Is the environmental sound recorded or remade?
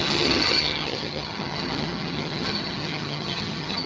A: remade